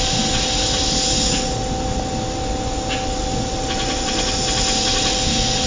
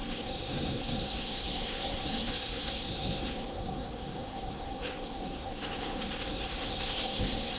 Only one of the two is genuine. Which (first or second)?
first